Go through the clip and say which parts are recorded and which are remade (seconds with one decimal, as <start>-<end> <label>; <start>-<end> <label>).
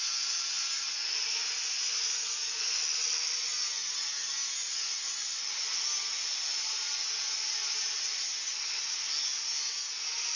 0.0-1.4 recorded; 1.4-2.7 remade; 2.7-4.6 recorded; 4.6-5.4 remade; 5.4-10.4 recorded